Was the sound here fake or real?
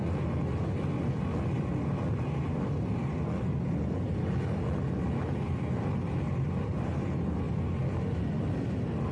real